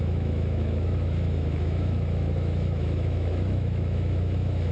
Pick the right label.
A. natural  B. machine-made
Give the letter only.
B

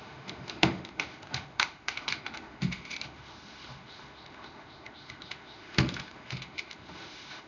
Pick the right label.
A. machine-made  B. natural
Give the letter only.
A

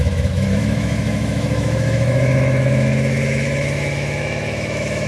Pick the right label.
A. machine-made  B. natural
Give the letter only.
A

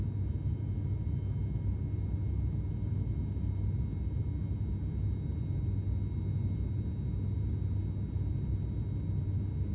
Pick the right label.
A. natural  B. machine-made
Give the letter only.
A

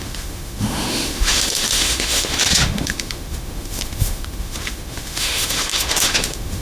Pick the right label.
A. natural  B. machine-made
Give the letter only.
B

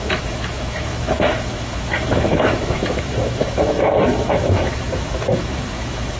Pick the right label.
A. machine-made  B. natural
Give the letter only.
A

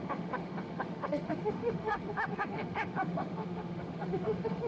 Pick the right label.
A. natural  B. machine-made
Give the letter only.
B